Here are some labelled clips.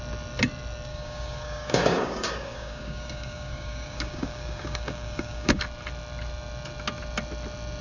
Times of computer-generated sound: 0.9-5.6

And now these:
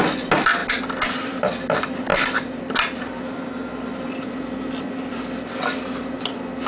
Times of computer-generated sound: none

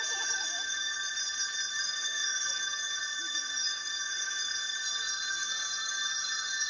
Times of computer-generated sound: 0.0-0.9; 1.7-4.7; 5.3-6.7

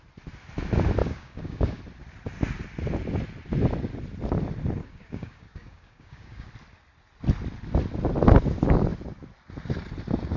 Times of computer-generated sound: 1.0-1.8; 4.8-6.5

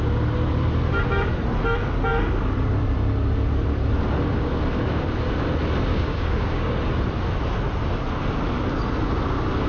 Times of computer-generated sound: 5.9-6.8

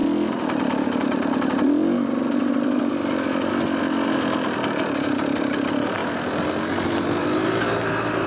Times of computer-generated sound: none